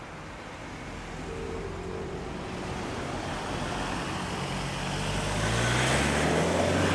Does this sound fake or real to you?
real